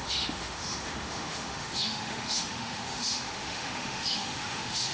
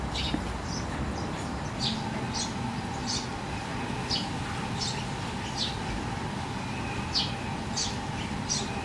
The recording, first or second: second